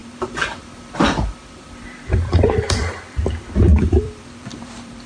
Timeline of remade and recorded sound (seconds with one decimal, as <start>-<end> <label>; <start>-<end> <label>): 0.0-5.1 remade